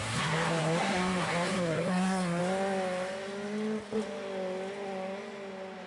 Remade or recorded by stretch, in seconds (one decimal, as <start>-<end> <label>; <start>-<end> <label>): 0.0-2.4 remade; 2.4-5.9 recorded